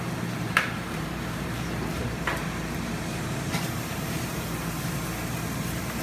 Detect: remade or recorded remade